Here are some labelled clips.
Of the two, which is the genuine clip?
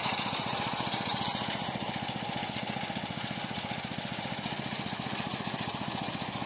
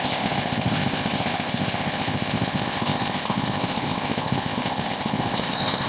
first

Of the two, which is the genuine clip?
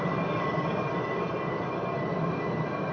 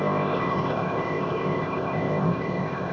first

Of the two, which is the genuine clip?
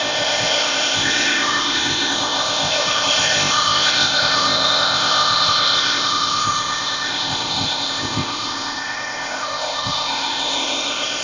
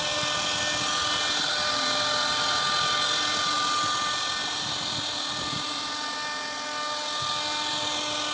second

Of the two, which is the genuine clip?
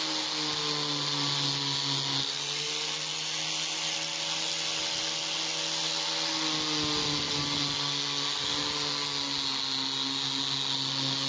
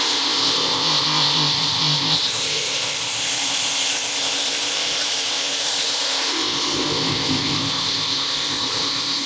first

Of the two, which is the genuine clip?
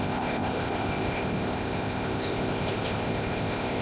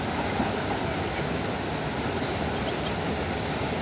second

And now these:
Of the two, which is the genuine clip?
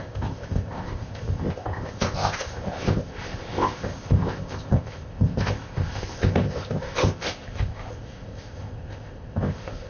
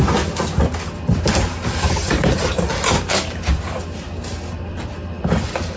second